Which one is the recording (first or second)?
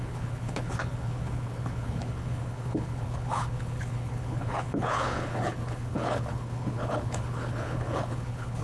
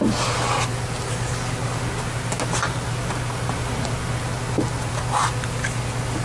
second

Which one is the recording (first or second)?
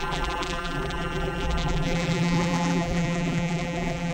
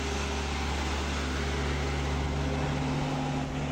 second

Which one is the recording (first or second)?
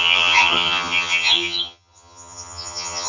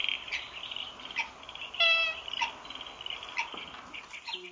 second